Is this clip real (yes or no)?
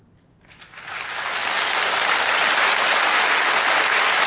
yes